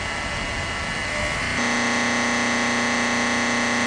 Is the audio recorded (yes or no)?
yes